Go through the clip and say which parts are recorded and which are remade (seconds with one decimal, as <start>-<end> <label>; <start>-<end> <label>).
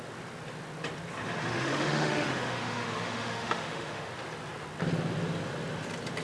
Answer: 0.0-1.5 recorded; 1.5-4.1 remade; 4.1-6.2 recorded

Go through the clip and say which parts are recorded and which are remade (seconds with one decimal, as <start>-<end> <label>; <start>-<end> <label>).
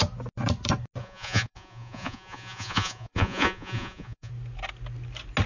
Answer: 0.0-1.0 recorded; 1.0-4.3 remade; 4.3-5.5 recorded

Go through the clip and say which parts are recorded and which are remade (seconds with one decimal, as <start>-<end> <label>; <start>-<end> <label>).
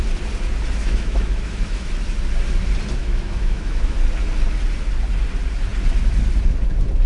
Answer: 0.0-0.8 recorded; 0.8-1.9 remade; 1.9-3.0 recorded; 3.0-4.0 remade; 4.0-7.1 recorded